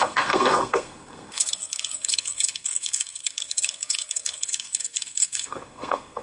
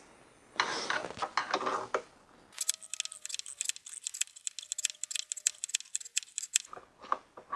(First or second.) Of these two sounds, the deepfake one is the first